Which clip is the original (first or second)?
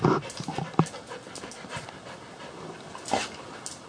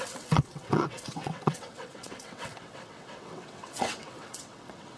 first